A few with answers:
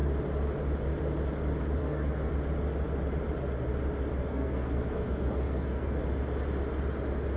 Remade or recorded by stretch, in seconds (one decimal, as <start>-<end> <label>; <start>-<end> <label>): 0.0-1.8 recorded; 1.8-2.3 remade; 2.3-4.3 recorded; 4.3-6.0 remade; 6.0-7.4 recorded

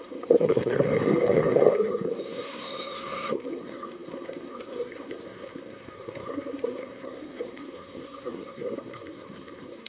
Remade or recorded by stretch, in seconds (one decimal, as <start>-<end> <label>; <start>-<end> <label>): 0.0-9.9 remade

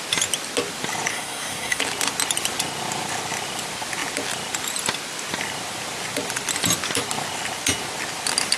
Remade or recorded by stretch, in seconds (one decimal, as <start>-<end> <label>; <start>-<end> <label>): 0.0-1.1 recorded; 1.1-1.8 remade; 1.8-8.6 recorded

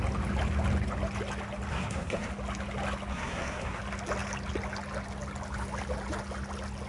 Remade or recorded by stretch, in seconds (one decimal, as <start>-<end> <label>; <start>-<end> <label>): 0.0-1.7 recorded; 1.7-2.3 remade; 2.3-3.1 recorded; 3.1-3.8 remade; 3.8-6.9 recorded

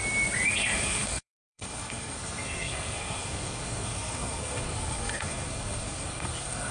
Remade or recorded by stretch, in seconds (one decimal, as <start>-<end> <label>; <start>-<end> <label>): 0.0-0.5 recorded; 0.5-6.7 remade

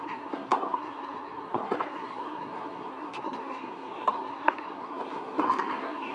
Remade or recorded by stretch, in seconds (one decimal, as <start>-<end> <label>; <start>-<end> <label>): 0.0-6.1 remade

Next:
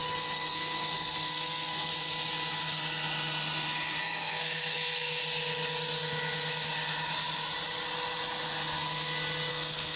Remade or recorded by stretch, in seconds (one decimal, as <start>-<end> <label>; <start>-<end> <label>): 0.0-1.9 remade; 1.9-4.0 recorded; 4.0-5.2 remade; 5.2-9.5 recorded; 9.5-10.0 remade